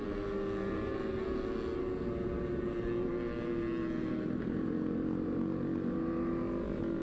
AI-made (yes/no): no